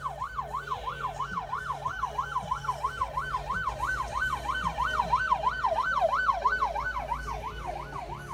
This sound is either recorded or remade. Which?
recorded